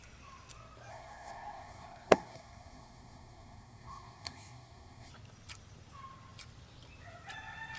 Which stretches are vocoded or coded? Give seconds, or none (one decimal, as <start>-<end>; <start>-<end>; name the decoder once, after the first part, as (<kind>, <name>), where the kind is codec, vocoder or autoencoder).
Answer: 0.9-5.1 (codec, SNAC)